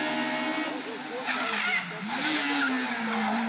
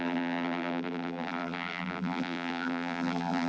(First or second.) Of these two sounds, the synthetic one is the second